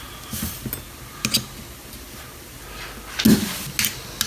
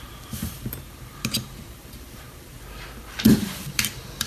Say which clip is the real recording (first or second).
first